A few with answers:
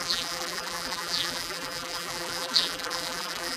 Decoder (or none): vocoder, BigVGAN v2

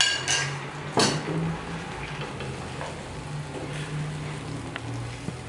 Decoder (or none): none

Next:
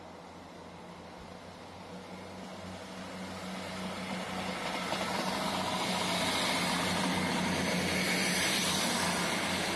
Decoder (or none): none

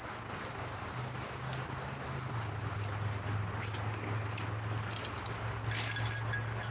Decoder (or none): none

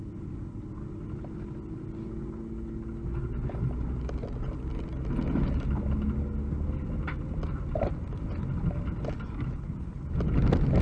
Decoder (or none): none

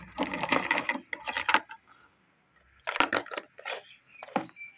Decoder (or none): none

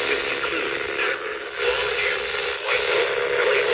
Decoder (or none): none